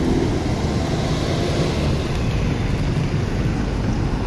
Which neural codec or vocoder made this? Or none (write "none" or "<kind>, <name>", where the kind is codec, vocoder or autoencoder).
none